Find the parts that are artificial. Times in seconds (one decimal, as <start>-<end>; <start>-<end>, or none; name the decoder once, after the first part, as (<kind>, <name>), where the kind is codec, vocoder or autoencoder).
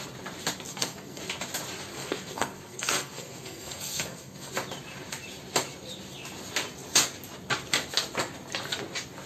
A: 0.7-1.2 (codec, SNAC); 1.9-4.5